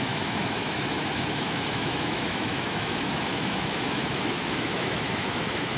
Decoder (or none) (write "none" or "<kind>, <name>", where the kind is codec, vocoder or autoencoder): autoencoder, DAC-VAE